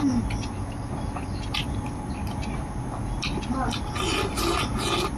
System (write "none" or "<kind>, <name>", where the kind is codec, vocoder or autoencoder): none